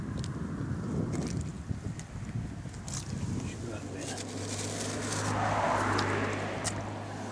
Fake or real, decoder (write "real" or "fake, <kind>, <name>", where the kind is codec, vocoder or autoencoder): real